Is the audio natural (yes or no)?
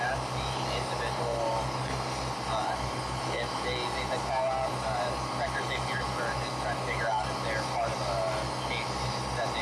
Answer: yes